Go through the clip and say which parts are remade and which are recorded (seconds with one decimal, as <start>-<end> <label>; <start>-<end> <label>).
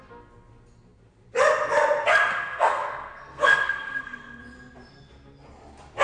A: 0.0-2.3 recorded; 2.3-4.4 remade; 4.4-6.0 recorded